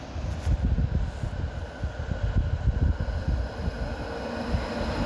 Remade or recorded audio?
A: recorded